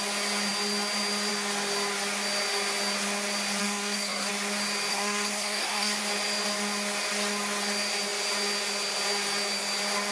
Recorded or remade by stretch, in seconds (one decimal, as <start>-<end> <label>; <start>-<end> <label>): 0.0-3.6 recorded; 3.6-4.3 remade; 4.3-4.9 recorded; 4.9-6.0 remade; 6.0-10.1 recorded

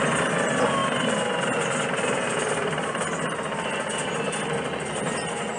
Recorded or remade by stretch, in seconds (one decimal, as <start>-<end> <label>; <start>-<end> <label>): 0.0-5.6 recorded

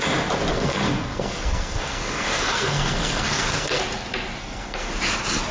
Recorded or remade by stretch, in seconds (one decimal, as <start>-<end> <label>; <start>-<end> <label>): 0.0-0.5 recorded; 0.5-3.8 remade; 3.8-4.4 recorded; 4.4-4.9 remade; 4.9-5.5 recorded